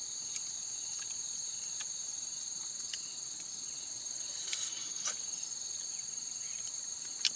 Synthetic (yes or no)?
no